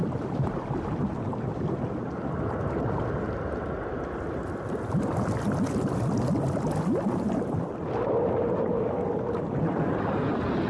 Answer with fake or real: real